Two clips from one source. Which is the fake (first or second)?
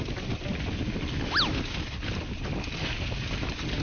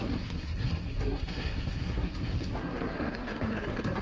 second